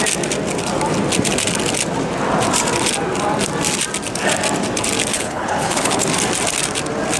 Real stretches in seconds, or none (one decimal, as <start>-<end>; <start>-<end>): 0.0-5.1; 6.0-7.2